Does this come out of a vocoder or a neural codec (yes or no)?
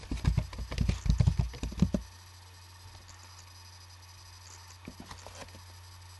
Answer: no